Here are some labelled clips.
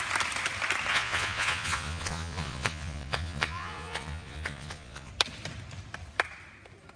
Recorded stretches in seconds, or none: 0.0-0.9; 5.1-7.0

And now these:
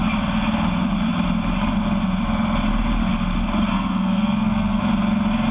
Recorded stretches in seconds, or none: 0.0-3.7; 4.8-5.5

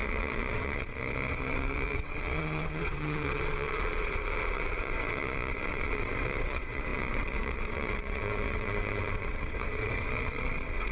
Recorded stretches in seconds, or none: none

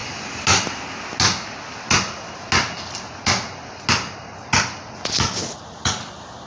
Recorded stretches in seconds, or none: 0.0-6.5

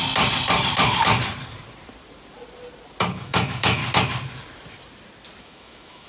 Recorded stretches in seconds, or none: 0.0-3.2; 3.8-5.4

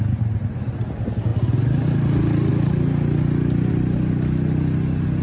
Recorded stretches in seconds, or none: 0.0-5.2